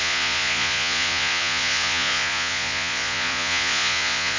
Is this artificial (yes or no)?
yes